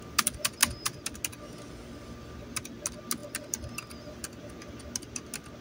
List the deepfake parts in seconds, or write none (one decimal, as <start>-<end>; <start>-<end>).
none